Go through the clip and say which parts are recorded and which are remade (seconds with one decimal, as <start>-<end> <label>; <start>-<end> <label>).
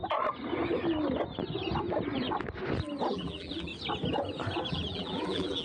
0.0-3.1 recorded; 3.1-3.7 remade; 3.7-4.7 recorded; 4.7-5.6 remade